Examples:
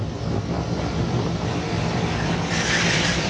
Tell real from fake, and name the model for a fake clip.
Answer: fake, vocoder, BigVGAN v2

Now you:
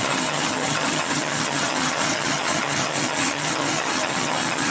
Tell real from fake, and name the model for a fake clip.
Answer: fake, vocoder, HiFi-GAN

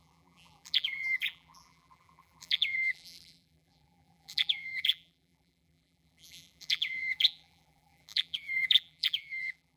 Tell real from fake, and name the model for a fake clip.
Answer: fake, vocoder, BigVGAN v2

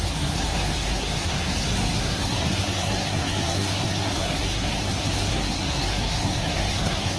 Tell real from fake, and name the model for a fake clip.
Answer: fake, codec, SNAC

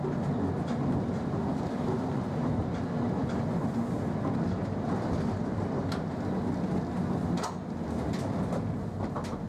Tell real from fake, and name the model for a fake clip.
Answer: real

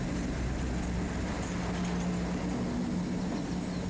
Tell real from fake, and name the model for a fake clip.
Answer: real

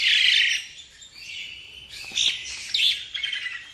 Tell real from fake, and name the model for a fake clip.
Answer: real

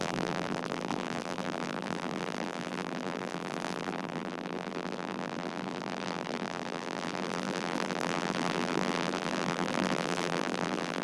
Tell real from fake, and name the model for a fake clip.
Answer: fake, vocoder, BigVGAN v2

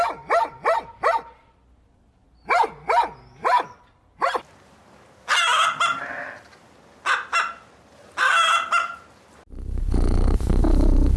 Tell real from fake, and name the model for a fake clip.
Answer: real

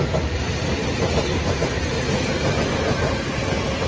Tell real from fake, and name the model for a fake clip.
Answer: real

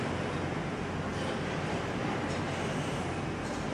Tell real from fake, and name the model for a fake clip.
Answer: real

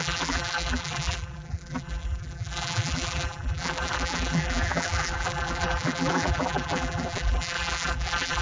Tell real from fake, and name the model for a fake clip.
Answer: fake, vocoder, BigVGAN v2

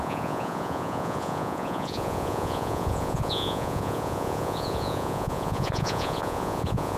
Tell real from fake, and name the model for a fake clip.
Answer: fake, vocoder, Vocos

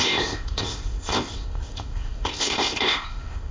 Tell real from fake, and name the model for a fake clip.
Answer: fake, codec, ZipCodec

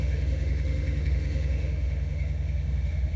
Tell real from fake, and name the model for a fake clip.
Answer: fake, autoencoder, DAC-VAE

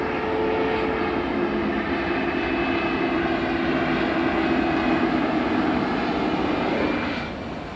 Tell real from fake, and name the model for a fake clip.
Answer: real